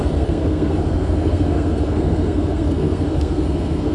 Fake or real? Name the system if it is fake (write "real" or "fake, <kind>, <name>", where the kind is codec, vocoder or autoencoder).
fake, codec, SNAC